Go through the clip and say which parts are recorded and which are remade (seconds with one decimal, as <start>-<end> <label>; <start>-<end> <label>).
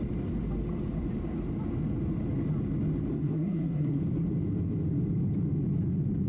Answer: 0.0-3.1 recorded; 3.1-4.0 remade; 4.0-6.3 recorded